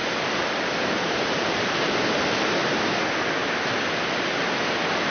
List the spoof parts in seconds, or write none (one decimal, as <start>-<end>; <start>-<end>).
none